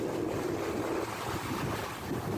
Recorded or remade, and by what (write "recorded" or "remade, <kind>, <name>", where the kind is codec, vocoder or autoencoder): recorded